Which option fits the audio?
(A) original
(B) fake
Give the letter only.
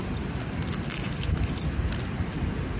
A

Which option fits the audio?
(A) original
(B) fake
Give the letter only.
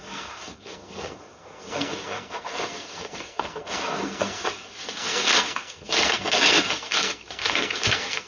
B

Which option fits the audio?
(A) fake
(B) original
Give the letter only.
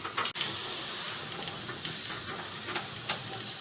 B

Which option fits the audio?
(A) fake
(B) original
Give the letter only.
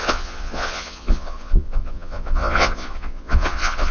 A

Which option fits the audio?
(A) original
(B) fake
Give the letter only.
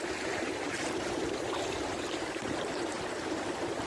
B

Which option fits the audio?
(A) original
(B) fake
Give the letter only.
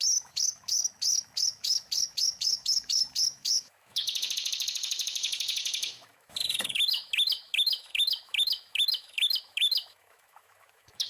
B